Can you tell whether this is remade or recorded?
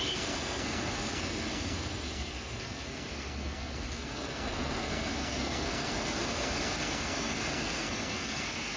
remade